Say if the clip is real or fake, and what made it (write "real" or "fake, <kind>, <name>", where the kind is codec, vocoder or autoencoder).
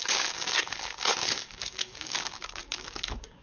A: fake, codec, DAC